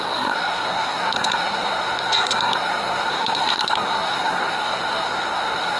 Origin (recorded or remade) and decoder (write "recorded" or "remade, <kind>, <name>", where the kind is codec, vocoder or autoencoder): remade, codec, SNAC